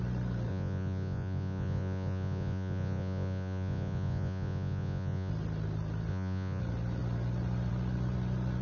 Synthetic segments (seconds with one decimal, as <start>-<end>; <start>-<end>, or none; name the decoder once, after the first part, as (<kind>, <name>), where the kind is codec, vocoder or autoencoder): 0.5-5.3 (vocoder, Vocos); 6.1-6.6